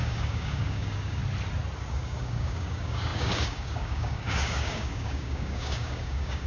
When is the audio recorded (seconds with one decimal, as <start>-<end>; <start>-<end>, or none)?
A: 1.2-1.9